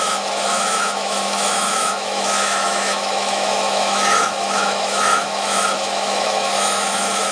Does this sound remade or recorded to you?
remade